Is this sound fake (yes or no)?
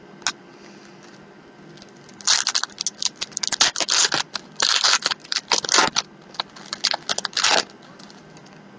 no